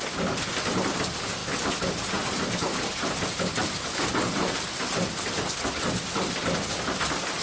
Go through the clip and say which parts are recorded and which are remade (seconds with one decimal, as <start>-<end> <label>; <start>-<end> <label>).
0.0-7.4 recorded